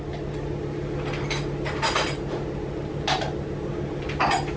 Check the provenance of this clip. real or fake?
real